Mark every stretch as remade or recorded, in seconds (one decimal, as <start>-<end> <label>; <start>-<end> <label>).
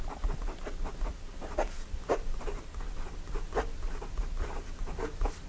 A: 0.0-5.5 recorded